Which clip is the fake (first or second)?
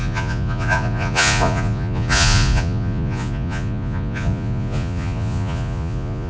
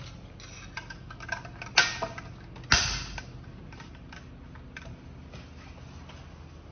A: first